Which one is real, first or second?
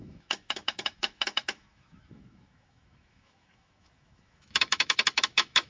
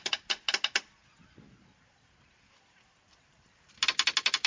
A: second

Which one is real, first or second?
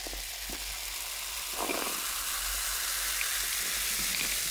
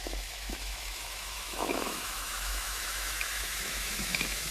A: first